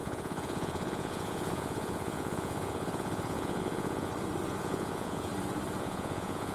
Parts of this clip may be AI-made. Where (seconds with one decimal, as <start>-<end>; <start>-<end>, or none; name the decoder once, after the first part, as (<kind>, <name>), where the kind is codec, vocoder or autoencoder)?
0.0-4.1 (vocoder, Vocos); 4.6-5.3; 5.8-6.5